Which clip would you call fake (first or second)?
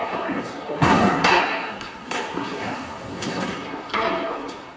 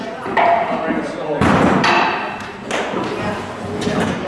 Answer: first